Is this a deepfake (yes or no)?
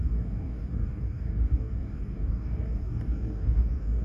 yes